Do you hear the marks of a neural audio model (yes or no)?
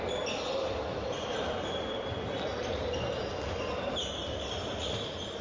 no